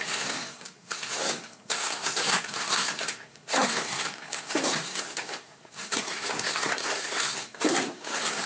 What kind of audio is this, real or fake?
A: fake